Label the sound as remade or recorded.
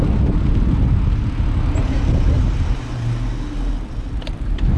recorded